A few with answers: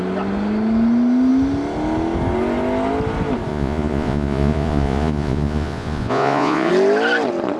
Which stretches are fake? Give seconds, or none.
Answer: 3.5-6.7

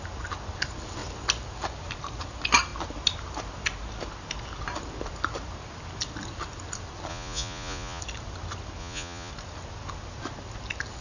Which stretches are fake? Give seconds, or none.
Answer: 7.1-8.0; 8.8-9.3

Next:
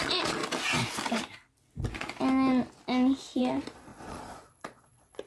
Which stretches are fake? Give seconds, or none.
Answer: 0.0-0.4; 3.4-5.3

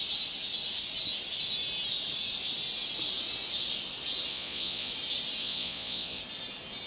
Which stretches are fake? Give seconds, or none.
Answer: 4.3-4.9; 5.4-6.2

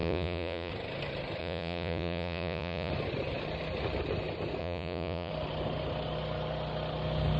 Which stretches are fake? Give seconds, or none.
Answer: 0.0-0.7; 1.4-2.9; 4.6-5.3

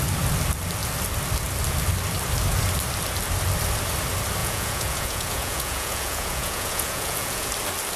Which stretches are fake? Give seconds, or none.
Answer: 4.4-7.5

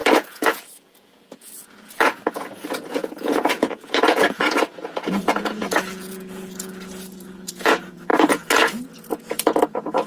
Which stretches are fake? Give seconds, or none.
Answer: 0.0-10.1

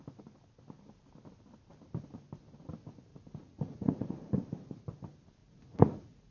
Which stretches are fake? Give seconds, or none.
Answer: 3.1-4.3; 5.4-6.3